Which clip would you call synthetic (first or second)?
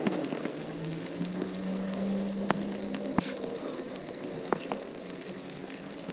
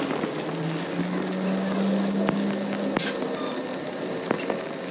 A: first